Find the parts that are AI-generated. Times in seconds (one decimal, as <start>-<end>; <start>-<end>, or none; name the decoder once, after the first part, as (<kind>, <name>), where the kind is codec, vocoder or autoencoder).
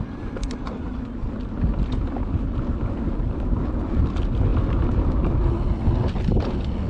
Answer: none